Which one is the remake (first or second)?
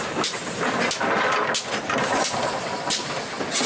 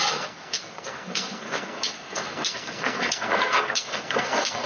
second